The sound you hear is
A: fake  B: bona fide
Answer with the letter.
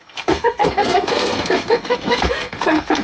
A